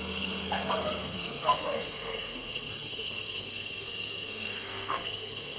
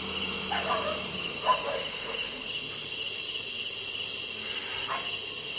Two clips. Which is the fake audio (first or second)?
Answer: first